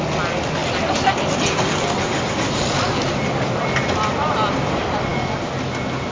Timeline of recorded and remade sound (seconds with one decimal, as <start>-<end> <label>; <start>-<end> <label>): 0.0-6.1 recorded